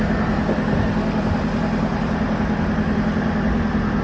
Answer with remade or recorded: recorded